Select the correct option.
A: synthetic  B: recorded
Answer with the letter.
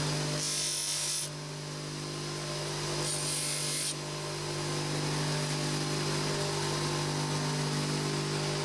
B